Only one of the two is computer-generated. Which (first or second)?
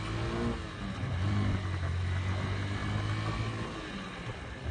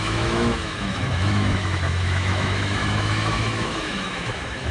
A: second